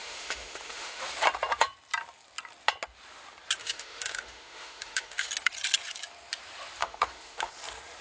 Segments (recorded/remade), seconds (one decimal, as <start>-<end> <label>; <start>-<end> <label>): 0.0-1.0 remade; 1.0-3.6 recorded; 3.6-5.3 remade; 5.3-6.8 recorded; 6.8-7.5 remade; 7.5-8.0 recorded

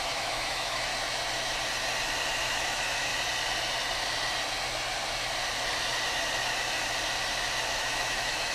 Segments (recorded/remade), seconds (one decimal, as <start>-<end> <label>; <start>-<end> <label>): 0.0-0.9 remade; 0.9-2.4 recorded; 2.4-3.1 remade; 3.1-7.8 recorded; 7.8-8.5 remade

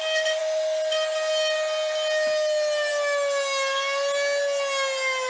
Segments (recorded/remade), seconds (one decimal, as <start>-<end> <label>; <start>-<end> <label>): 0.0-5.3 recorded

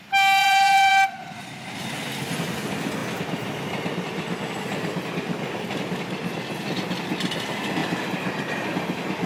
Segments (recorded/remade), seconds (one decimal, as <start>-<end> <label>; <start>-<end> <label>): 0.0-0.4 recorded; 0.4-0.9 remade; 0.9-9.3 recorded

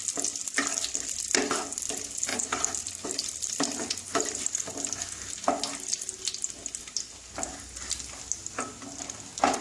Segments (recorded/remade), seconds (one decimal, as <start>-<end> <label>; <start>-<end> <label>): 0.0-9.6 recorded

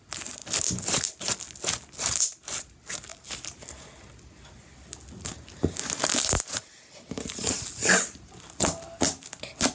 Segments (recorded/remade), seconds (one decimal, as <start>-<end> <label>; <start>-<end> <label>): 0.0-9.7 recorded

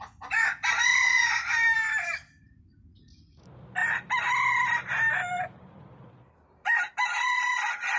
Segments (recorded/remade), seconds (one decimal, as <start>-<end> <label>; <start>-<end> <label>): 0.0-0.9 recorded; 0.9-2.6 remade; 2.6-3.8 recorded; 3.8-7.6 remade; 7.6-8.0 recorded

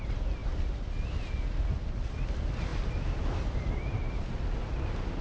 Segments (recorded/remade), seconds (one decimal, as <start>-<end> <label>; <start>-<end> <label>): 0.0-5.2 recorded